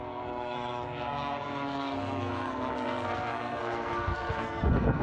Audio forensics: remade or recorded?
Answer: remade